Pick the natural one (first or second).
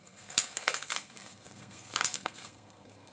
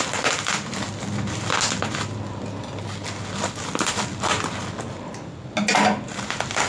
second